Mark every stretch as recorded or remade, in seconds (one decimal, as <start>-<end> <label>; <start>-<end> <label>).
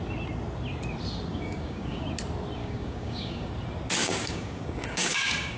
0.0-1.3 recorded; 1.3-2.0 remade; 2.0-2.6 recorded; 2.6-3.5 remade; 3.5-4.0 recorded; 4.0-5.6 remade